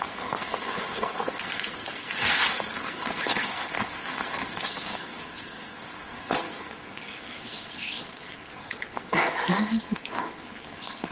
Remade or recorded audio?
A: remade